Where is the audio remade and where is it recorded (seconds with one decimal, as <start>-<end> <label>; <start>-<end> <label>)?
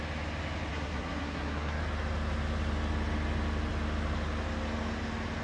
0.0-0.7 recorded; 0.7-1.8 remade; 1.8-5.4 recorded